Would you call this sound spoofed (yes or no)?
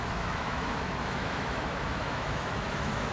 yes